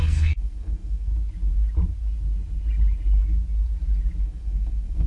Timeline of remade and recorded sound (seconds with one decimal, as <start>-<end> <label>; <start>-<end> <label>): 0.0-1.1 remade; 1.1-4.2 recorded; 4.2-5.1 remade